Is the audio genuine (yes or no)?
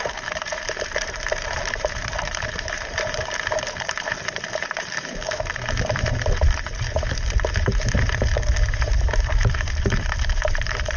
no